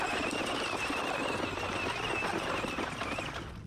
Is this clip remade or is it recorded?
recorded